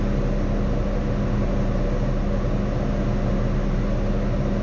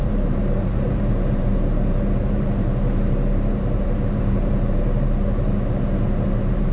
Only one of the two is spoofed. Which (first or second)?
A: second